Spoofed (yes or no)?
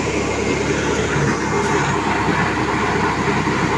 no